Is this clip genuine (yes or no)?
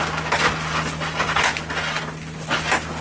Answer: yes